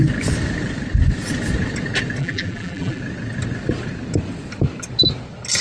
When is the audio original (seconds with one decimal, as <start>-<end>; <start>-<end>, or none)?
0.0-2.2; 3.0-5.6